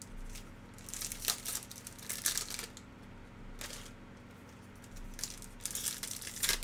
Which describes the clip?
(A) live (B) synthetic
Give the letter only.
A